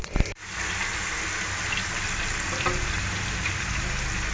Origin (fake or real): real